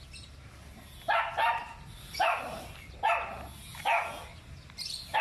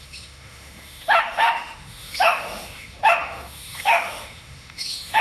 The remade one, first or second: second